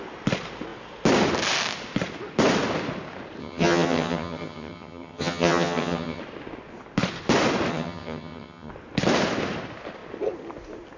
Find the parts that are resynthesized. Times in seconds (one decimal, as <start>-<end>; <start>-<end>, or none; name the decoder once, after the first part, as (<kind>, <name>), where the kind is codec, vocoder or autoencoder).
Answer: 3.4-6.2 (vocoder, HiFi-GAN); 7.7-8.7